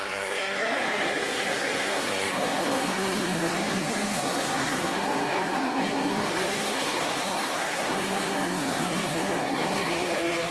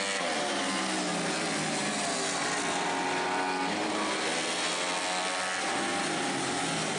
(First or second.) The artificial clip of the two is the first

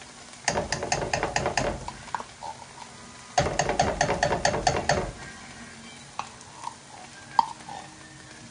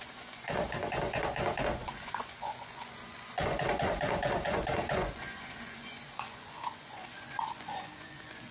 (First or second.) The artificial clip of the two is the second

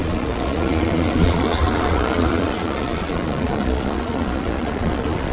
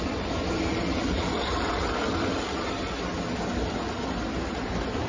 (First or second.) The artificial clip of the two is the first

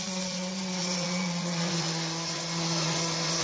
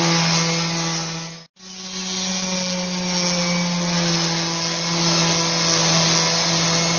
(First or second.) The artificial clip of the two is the first